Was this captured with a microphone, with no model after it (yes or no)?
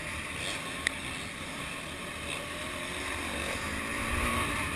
yes